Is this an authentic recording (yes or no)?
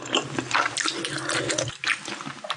yes